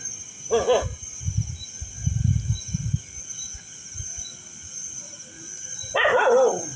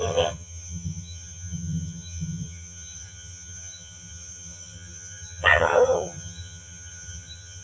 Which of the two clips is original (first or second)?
first